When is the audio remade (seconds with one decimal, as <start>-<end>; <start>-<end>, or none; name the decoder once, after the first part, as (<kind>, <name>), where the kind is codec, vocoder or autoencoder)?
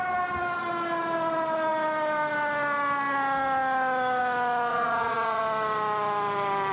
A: 4.7-5.4 (vocoder, Vocos)